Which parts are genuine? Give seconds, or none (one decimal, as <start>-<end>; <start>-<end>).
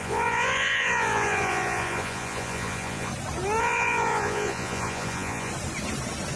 3.1-3.6; 5.5-6.4